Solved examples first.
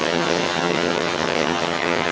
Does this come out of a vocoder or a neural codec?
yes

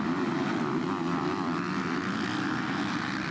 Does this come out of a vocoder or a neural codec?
no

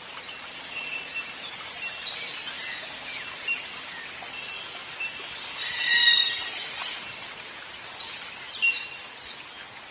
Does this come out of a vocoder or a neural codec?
no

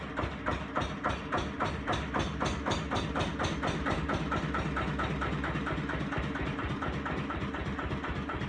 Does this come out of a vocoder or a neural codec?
no